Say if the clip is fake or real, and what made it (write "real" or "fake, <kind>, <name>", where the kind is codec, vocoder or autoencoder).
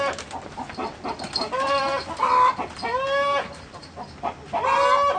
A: real